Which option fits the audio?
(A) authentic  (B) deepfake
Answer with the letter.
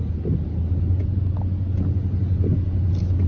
A